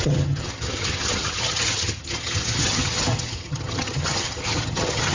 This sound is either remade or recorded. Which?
remade